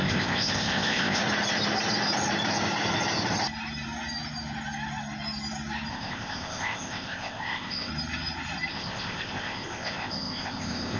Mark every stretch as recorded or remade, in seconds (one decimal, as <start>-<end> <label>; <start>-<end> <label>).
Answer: 0.0-1.2 remade; 1.2-5.9 recorded; 5.9-7.9 remade; 7.9-8.7 recorded; 8.7-11.0 remade